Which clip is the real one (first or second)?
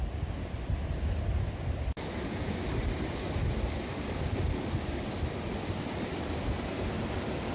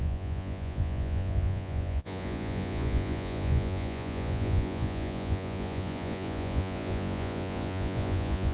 first